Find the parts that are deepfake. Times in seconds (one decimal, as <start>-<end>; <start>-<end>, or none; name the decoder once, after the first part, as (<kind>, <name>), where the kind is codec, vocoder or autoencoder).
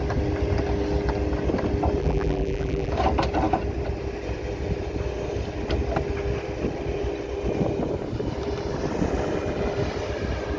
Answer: 2.0-2.9 (vocoder, BigVGAN v2)